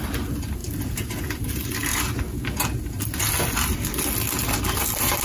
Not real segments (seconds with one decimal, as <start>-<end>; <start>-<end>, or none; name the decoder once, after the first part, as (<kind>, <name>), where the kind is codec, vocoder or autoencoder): none